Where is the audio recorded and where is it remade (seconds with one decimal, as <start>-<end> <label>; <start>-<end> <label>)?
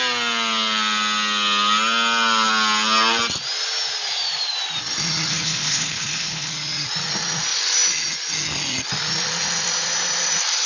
0.0-5.3 recorded; 5.3-6.5 remade; 6.5-10.7 recorded